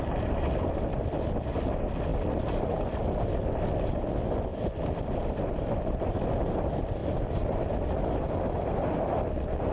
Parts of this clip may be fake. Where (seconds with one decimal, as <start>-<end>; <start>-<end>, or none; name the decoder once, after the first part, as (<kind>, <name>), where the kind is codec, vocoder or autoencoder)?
4.5-5.5 (vocoder, BigVGAN v2)